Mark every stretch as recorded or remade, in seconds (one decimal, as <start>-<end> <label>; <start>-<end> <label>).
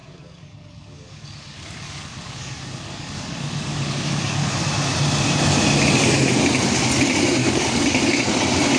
0.0-4.5 remade; 4.5-7.4 recorded; 7.4-8.2 remade; 8.2-8.8 recorded